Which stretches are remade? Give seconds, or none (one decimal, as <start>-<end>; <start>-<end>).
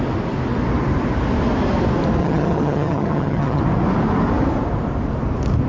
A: 2.2-3.6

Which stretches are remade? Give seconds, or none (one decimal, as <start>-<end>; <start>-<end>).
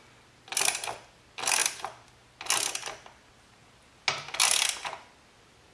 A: none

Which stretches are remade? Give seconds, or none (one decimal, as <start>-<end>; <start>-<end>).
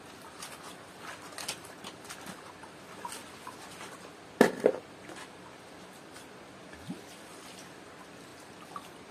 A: none